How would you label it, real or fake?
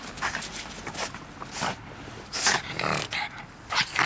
real